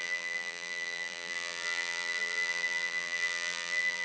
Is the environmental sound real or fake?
fake